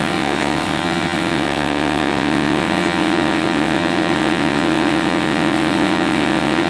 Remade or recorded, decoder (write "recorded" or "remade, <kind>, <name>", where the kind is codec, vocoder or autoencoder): remade, vocoder, WaveNeXt